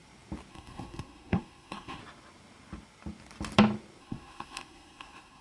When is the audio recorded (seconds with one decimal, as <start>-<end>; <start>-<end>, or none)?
0.0-0.5; 2.0-4.0